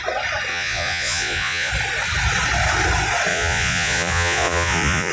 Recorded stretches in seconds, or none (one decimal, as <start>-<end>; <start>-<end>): 0.0-0.5; 1.7-3.3